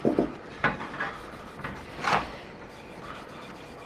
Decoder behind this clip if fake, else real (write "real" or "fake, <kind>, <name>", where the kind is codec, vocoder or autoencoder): real